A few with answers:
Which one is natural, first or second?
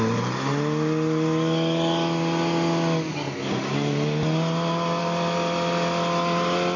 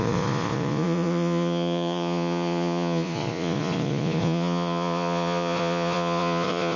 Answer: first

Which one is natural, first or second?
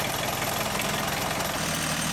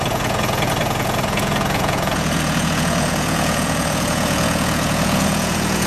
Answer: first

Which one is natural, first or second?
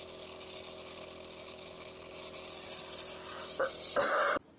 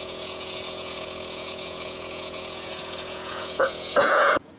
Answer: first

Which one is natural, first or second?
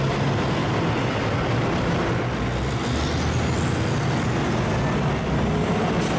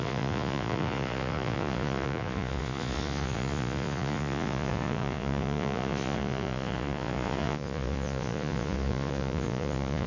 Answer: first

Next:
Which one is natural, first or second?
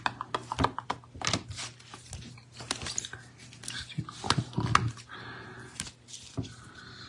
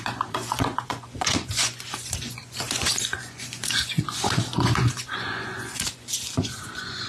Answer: first